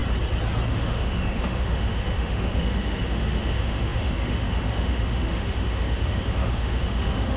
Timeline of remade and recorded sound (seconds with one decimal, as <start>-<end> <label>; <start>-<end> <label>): 0.0-0.7 recorded; 0.7-7.4 remade

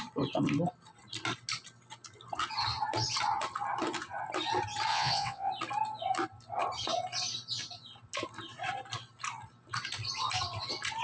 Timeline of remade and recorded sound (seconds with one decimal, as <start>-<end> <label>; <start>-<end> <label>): 0.0-4.9 recorded; 4.9-5.5 remade; 5.5-11.0 recorded

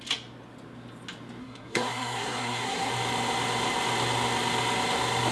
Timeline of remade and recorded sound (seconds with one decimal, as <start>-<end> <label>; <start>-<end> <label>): 0.0-1.4 recorded; 1.4-2.9 remade; 2.9-5.3 recorded